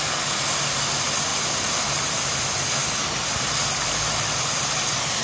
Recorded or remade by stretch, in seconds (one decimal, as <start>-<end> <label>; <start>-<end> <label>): 0.0-5.2 recorded